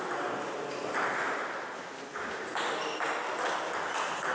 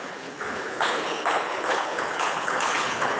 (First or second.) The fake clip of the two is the second